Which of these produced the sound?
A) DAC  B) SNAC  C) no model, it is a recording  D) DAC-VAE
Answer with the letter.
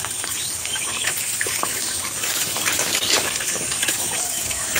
A